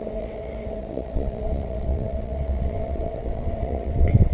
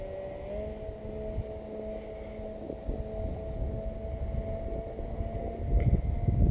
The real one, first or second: second